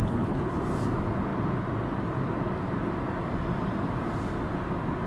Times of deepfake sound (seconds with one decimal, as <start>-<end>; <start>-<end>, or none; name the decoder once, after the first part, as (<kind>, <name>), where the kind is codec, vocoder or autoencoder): 0.0-0.6 (codec, HILCodec)